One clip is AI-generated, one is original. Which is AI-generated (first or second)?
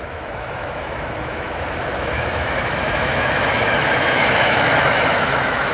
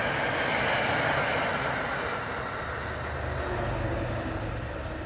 first